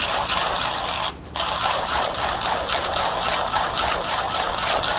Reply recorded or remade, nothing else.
recorded